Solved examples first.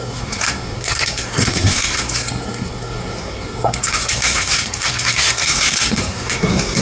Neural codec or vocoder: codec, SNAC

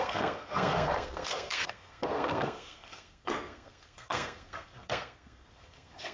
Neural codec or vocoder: codec, SNAC